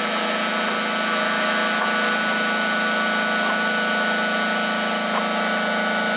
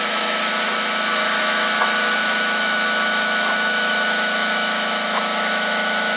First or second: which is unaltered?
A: first